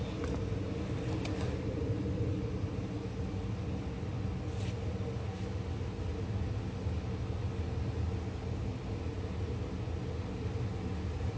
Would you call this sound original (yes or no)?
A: yes